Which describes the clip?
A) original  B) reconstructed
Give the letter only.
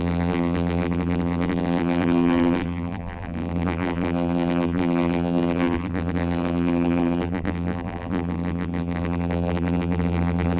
B